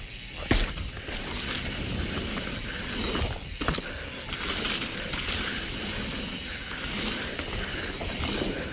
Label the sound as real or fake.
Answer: real